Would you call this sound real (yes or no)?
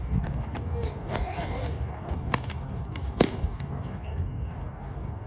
no